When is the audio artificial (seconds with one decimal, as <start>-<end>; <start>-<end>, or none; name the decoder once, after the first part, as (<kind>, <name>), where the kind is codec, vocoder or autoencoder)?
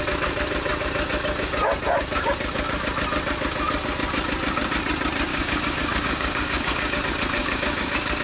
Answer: 5.3-7.0 (codec, DAC); 7.4-8.2